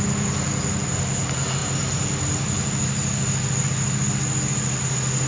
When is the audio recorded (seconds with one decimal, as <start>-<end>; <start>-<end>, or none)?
0.0-5.3

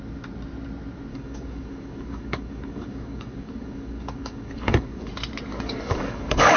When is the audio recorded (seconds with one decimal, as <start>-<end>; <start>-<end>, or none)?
0.0-1.1; 5.1-5.5

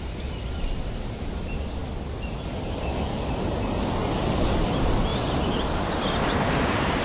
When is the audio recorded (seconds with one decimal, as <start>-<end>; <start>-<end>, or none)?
0.0-5.1

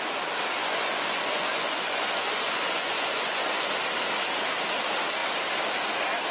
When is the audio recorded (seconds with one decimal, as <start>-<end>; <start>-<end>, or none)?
0.0-0.6; 3.7-6.3

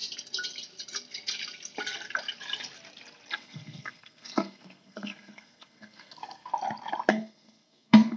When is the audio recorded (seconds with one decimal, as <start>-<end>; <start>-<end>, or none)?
0.0-3.3; 6.5-7.1